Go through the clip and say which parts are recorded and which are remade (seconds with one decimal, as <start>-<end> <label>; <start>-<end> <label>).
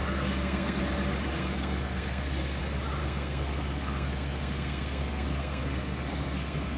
0.0-0.8 remade; 0.8-1.4 recorded; 1.4-2.6 remade; 2.6-3.0 recorded; 3.0-6.8 remade